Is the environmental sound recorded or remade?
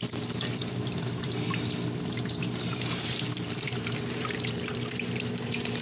remade